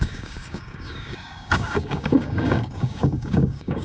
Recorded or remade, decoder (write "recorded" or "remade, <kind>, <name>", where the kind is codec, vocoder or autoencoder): remade, codec, DAC